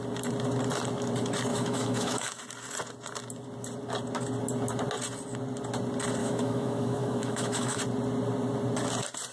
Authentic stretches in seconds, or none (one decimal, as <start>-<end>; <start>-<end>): 0.0-1.5; 2.4-6.2; 7.8-9.3